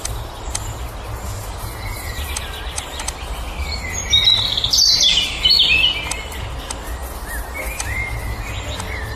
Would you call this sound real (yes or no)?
yes